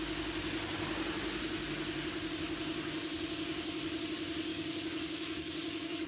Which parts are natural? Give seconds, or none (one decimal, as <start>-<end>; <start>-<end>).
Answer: 0.0-4.5